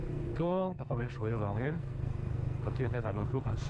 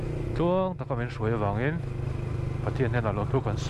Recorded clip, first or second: second